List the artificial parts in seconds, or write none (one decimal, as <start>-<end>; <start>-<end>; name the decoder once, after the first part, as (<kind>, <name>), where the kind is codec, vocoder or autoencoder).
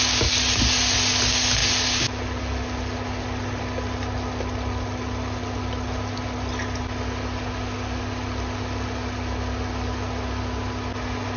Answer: none